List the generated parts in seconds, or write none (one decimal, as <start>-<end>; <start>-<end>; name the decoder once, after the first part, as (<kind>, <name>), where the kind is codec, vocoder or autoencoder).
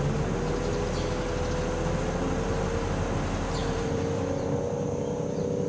3.6-4.6 (vocoder, BigVGAN v2)